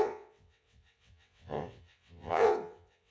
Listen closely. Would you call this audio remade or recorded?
remade